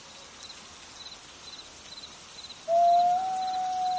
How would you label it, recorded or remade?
recorded